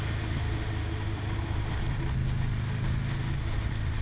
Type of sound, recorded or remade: recorded